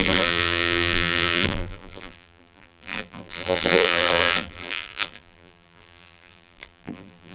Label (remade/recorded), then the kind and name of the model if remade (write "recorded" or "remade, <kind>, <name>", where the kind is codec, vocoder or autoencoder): remade, vocoder, BigVGAN v2